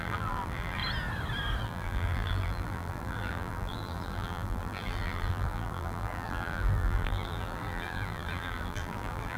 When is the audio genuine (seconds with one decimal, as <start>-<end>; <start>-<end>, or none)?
0.8-1.6